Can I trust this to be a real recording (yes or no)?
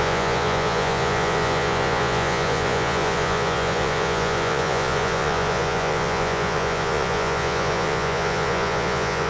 no